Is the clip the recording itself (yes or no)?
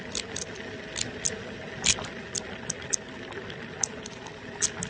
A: yes